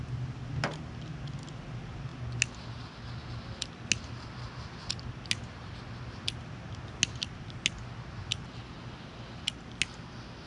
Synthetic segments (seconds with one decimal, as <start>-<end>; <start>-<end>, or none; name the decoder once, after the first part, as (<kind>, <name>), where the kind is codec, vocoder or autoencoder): none